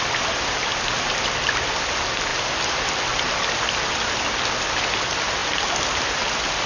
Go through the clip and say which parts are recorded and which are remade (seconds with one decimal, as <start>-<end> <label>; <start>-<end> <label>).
0.0-6.7 recorded